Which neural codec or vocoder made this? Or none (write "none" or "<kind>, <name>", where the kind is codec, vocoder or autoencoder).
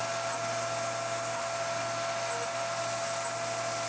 none